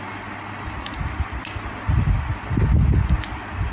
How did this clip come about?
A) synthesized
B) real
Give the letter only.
B